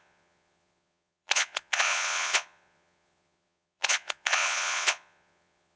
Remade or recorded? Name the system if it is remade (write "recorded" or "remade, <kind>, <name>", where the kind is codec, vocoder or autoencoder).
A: remade, vocoder, Vocos